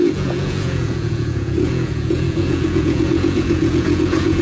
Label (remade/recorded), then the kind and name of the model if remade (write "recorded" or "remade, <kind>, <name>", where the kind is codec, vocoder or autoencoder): remade, vocoder, Vocos